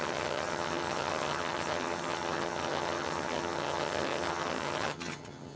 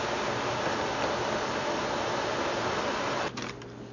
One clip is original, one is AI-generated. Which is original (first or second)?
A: second